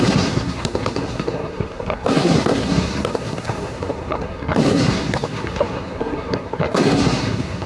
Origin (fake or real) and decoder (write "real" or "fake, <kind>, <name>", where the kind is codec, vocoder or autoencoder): fake, codec, SNAC